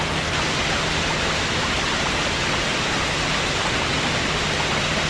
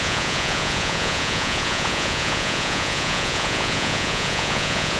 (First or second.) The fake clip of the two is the second